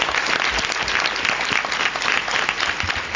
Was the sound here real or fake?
real